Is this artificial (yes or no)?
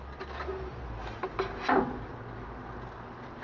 no